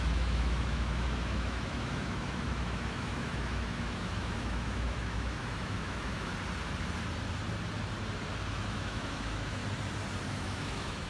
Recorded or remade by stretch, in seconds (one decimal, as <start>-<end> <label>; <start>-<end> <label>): 0.0-6.3 remade; 6.3-8.5 recorded; 8.5-9.6 remade; 9.6-10.3 recorded; 10.3-11.1 remade